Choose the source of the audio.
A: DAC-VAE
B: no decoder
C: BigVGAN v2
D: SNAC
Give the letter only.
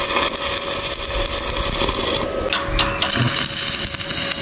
B